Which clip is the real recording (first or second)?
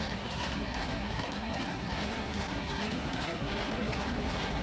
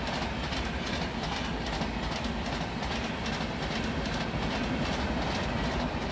second